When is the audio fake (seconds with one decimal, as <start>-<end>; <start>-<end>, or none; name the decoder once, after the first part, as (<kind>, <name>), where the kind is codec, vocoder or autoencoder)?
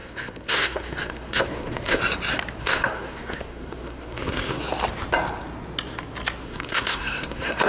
0.0-2.0 (codec, SNAC); 2.6-4.7; 6.4-7.7